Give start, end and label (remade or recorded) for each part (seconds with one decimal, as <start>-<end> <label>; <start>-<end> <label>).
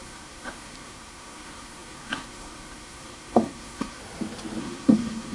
0.0-4.0 remade; 4.0-4.6 recorded; 4.6-5.3 remade